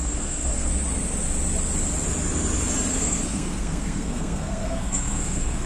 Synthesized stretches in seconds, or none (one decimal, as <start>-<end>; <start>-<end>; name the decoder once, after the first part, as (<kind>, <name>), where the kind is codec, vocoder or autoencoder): 0.0-0.7 (codec, SNAC); 2.9-5.7